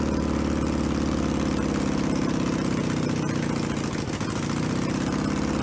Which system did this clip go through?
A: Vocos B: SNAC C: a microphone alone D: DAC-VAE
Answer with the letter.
C